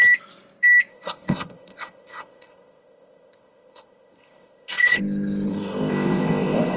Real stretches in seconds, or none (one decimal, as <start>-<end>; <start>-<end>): 0.0-0.9; 5.0-5.5

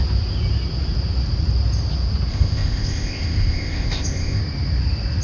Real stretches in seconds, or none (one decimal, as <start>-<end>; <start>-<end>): 0.0-2.3; 4.4-5.2

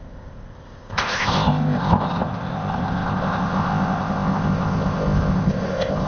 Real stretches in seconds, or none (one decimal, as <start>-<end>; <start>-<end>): none

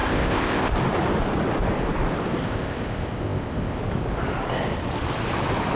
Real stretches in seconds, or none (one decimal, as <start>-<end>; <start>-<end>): 0.7-2.4; 3.8-5.8

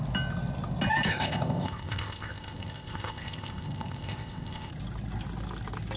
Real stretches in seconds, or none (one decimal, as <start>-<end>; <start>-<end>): 0.0-1.1; 4.7-6.0